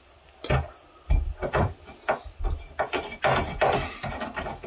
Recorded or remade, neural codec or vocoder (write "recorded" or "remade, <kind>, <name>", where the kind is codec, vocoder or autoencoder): recorded